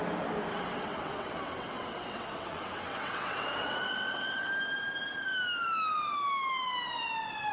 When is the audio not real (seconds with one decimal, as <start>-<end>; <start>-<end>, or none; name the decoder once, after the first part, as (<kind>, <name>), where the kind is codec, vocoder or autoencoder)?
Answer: 0.5-4.5 (vocoder, WaveNeXt)